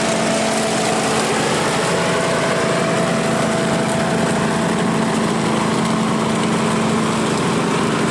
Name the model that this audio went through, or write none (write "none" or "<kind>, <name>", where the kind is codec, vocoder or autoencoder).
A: none